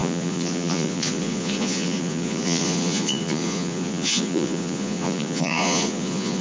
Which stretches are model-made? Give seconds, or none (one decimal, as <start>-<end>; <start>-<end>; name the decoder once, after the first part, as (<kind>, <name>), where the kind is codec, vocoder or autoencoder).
0.0-6.4 (vocoder, Vocos)